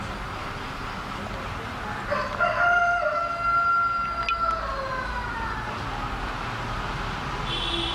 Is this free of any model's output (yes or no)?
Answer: yes